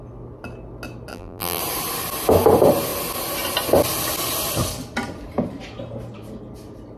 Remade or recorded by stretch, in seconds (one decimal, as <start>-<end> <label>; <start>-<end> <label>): 0.0-1.1 recorded; 1.1-1.6 remade; 1.6-7.0 recorded